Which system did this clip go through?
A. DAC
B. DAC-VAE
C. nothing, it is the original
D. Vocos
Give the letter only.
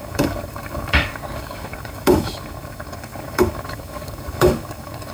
A